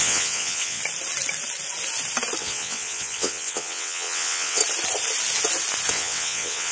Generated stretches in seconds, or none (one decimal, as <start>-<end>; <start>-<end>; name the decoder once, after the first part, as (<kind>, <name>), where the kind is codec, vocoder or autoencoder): 0.0-0.8 (vocoder, WaveNeXt); 2.4-4.6; 5.9-6.7